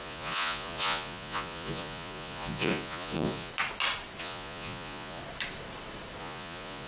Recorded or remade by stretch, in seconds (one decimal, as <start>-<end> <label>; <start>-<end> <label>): 0.0-3.5 remade; 3.5-4.2 recorded; 4.2-5.2 remade; 5.2-6.2 recorded; 6.2-6.9 remade